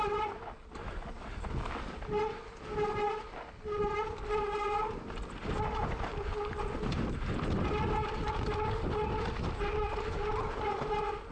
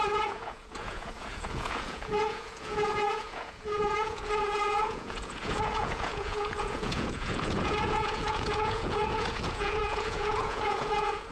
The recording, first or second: first